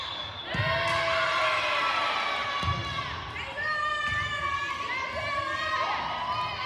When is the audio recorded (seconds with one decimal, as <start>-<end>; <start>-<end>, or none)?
0.0-6.7